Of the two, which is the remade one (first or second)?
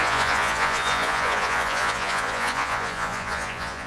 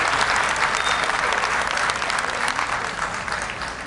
first